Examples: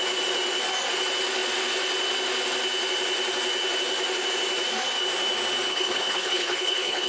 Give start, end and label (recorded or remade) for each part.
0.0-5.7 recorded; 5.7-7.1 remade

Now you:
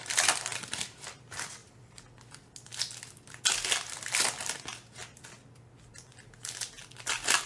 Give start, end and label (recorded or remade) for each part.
0.0-7.5 recorded

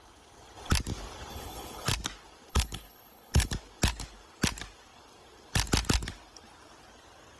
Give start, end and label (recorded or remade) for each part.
0.0-1.3 recorded; 1.3-1.9 remade; 1.9-2.5 recorded; 2.5-3.5 remade; 3.5-7.4 recorded

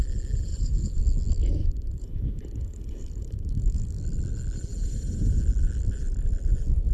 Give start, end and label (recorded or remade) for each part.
0.0-0.5 recorded; 0.5-1.0 remade; 1.0-1.6 recorded; 1.6-4.0 remade; 4.0-6.9 recorded

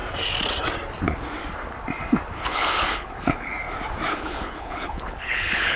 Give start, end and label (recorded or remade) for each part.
0.0-2.5 recorded; 2.5-3.5 remade; 3.5-4.1 recorded; 4.1-5.8 remade